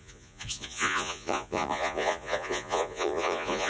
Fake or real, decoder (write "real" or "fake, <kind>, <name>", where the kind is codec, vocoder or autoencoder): fake, vocoder, Vocos